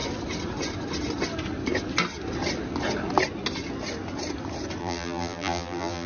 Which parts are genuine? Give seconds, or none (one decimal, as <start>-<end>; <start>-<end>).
0.0-4.8